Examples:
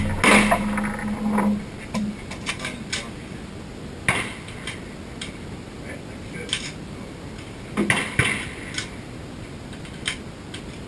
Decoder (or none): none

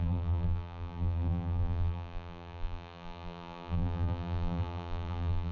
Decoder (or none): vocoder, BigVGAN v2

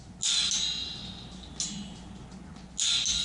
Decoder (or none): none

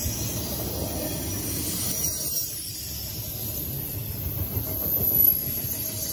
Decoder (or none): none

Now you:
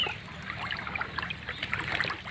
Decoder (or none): none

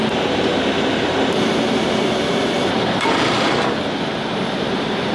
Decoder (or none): vocoder, BigVGAN v2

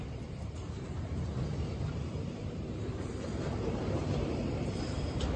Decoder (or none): vocoder, BigVGAN v2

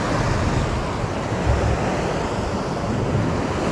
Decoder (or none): none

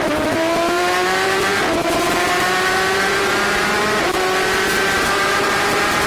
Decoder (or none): vocoder, BigVGAN v2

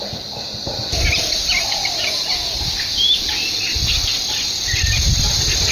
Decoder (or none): none